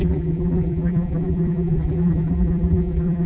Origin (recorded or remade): remade